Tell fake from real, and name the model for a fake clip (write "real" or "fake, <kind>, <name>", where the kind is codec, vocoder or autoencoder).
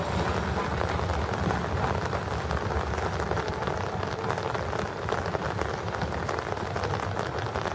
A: real